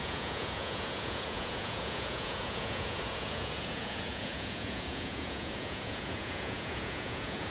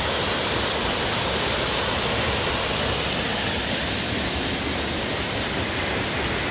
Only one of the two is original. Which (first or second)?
second